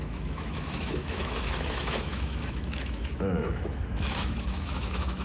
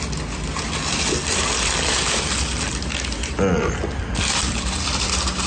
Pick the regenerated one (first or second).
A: first